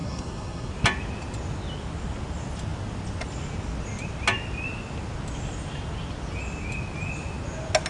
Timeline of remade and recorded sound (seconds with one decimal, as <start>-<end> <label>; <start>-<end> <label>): 0.0-0.7 remade; 0.7-7.9 recorded